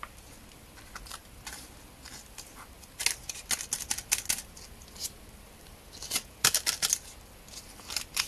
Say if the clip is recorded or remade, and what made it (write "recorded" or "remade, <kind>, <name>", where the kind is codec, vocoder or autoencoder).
recorded